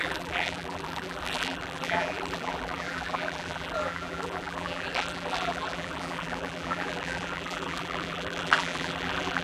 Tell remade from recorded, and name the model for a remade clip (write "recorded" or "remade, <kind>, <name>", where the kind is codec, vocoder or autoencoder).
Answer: remade, vocoder, BigVGAN v2